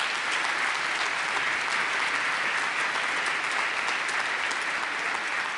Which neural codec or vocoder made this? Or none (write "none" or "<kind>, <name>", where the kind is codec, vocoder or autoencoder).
none